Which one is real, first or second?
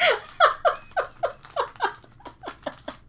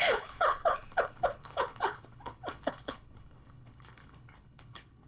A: first